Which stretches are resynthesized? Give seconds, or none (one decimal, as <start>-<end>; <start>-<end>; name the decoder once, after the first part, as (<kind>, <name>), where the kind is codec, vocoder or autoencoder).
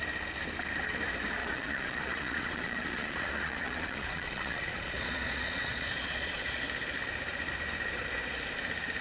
1.4-6.6 (vocoder, Vocos)